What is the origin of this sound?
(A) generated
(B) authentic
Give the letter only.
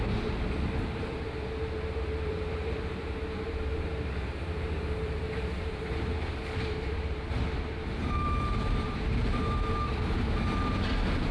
A